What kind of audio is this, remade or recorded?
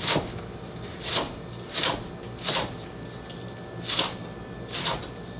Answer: recorded